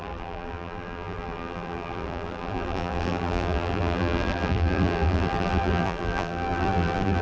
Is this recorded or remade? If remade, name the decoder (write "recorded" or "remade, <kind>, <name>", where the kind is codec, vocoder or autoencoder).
remade, vocoder, BigVGAN v2